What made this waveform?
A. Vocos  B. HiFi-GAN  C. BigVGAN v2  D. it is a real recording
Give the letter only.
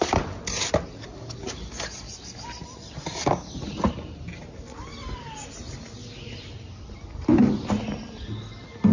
D